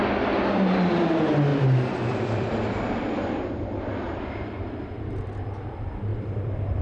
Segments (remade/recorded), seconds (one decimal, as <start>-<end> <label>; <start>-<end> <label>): 0.0-1.5 recorded; 1.5-5.0 remade; 5.0-6.1 recorded; 6.1-6.8 remade